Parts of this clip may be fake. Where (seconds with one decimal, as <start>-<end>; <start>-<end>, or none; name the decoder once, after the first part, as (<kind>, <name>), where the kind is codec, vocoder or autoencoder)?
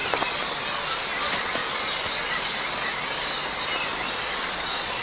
1.2-1.6 (vocoder, Vocos); 4.4-5.0